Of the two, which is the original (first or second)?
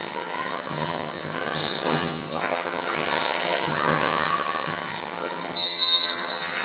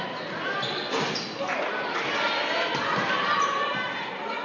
second